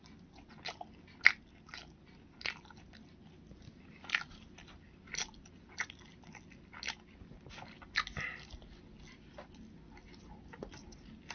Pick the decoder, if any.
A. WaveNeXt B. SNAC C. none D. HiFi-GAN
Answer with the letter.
C